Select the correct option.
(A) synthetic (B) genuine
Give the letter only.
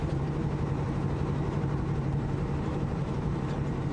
A